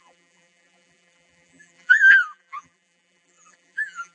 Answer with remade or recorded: remade